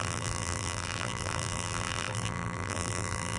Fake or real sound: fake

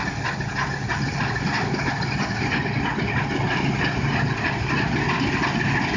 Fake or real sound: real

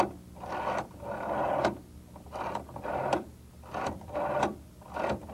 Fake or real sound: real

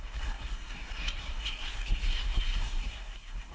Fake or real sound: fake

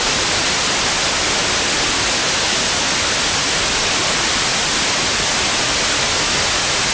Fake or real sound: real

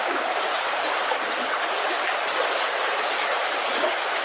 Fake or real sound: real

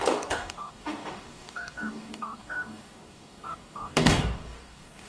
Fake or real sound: fake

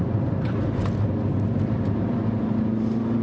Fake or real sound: real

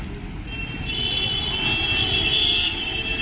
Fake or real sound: real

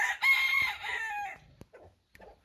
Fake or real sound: real